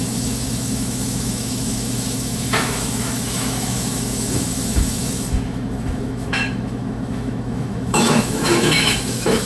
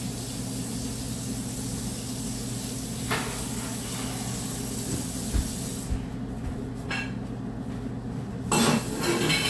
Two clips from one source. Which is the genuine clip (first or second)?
second